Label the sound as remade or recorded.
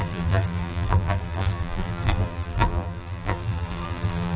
remade